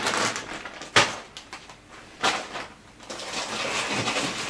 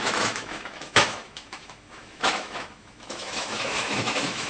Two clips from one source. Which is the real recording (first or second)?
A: first